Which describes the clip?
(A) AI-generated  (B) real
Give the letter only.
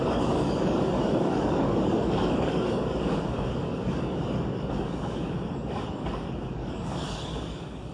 A